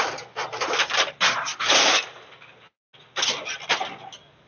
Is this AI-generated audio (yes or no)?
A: no